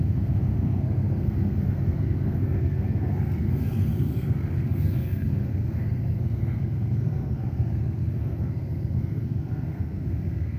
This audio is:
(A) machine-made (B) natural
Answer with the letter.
A